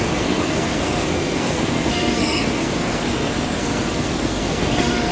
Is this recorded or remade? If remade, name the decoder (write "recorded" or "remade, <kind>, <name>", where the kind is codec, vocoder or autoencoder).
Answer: remade, codec, SNAC